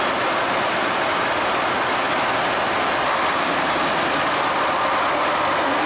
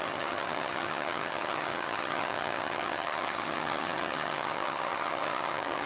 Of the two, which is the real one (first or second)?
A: first